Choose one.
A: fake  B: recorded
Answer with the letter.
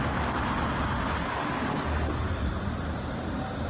B